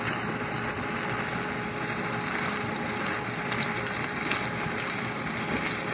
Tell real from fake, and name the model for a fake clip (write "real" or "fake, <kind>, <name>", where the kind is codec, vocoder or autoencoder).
real